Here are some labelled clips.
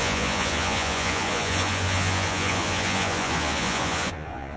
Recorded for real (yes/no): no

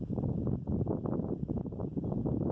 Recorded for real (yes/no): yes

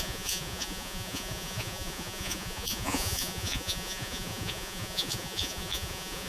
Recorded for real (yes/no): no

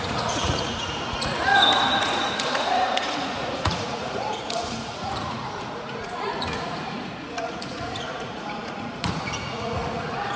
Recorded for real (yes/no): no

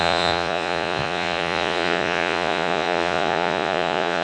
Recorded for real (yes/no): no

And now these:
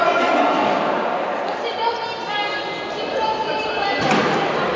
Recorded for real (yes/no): yes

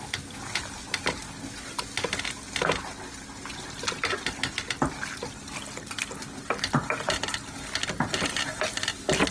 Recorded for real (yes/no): yes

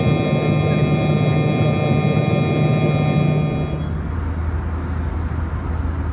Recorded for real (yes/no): yes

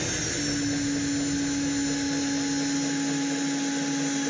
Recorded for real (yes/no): yes